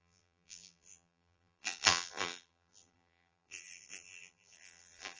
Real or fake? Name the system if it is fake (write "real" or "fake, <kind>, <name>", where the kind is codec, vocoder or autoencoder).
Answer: fake, vocoder, BigVGAN v2